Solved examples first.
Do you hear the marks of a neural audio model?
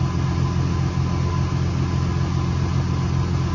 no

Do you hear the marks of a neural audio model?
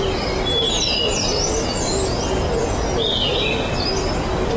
no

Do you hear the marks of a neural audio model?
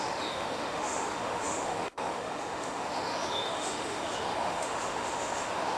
yes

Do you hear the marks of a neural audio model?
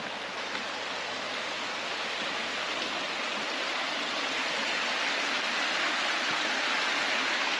no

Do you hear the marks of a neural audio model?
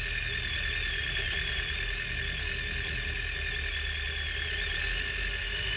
no